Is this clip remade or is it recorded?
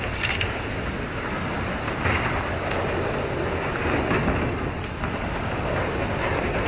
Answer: recorded